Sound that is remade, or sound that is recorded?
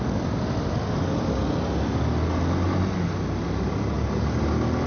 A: recorded